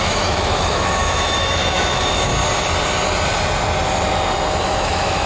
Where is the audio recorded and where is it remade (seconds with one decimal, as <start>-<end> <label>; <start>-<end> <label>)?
0.0-2.3 remade; 2.3-4.6 recorded; 4.6-5.3 remade